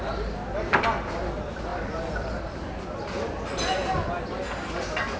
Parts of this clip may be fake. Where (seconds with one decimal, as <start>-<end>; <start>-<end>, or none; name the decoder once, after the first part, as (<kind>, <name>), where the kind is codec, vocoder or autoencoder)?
1.7-2.5 (vocoder, BigVGAN v2)